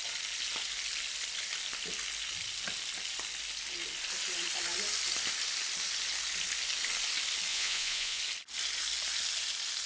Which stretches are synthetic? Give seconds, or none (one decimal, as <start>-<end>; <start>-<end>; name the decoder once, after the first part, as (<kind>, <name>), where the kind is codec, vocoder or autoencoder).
7.5-8.2 (vocoder, Vocos)